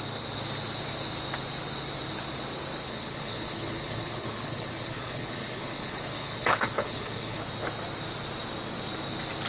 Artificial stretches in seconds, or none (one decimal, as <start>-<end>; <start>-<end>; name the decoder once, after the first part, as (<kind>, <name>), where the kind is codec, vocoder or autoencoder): 2.8-7.4 (codec, HILCodec)